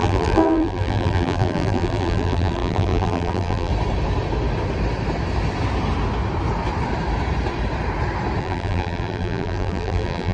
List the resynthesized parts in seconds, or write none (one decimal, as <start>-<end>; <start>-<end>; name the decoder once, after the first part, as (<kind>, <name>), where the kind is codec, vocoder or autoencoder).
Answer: 0.0-3.7 (vocoder, BigVGAN v2); 8.4-10.3